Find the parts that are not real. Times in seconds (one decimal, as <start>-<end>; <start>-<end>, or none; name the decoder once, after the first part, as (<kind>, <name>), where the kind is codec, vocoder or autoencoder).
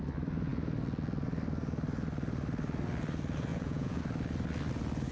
3.5-4.0 (vocoder, Vocos)